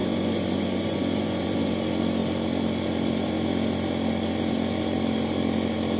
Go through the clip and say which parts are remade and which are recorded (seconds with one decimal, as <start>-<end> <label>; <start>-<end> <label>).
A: 0.0-1.7 remade; 1.7-6.0 recorded